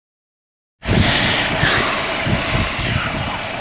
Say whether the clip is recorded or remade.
recorded